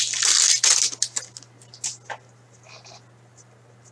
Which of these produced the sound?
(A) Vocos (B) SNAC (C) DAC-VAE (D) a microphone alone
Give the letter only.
D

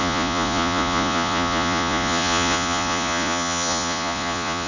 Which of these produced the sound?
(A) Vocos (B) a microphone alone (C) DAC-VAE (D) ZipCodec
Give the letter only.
A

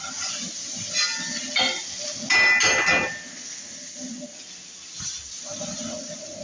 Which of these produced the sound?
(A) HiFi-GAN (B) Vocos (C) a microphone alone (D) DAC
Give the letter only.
C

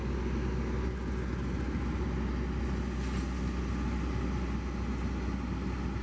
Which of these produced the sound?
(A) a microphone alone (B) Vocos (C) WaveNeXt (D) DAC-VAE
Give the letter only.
A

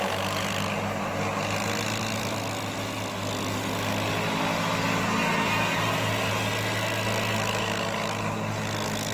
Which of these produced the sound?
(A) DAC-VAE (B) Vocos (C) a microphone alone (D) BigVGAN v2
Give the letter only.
C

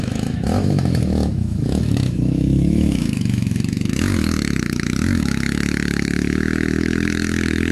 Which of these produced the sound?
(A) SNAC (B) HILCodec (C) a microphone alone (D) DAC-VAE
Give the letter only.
D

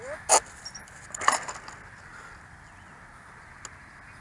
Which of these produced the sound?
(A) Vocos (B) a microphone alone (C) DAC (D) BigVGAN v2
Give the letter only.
B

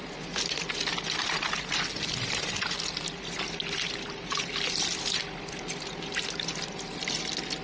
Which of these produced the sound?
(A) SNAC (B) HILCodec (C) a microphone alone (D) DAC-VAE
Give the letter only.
C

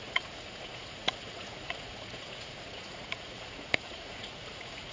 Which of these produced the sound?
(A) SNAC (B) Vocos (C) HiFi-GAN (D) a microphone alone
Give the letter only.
B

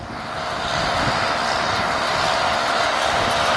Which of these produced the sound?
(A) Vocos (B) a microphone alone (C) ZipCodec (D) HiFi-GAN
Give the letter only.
B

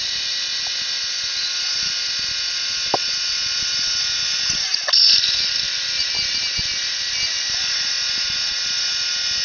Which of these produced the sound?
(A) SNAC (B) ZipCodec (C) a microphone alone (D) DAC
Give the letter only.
C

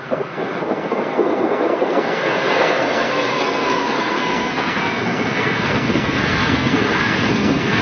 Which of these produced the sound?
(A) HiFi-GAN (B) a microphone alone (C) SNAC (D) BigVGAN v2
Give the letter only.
C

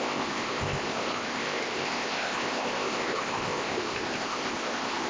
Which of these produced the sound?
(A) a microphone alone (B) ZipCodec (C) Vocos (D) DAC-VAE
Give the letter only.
B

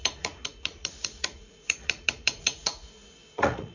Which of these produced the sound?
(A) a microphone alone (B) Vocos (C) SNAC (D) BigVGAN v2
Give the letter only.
B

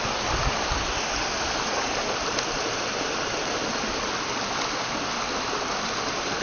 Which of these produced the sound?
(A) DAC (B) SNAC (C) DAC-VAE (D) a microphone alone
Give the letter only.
D